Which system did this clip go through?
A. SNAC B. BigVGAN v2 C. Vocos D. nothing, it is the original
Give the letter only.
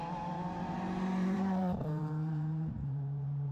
B